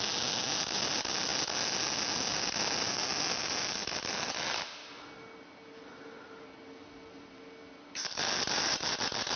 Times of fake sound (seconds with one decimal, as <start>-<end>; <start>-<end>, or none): none